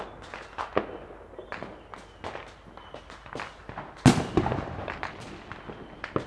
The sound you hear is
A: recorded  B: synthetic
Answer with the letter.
A